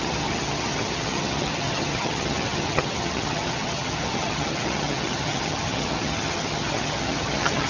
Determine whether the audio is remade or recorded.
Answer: remade